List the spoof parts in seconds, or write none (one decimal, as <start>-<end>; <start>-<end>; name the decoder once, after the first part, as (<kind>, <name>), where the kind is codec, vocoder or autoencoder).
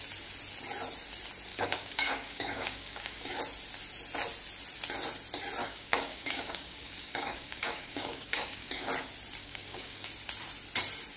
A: 1.5-3.4 (codec, DAC); 5.6-8.9; 9.4-10.1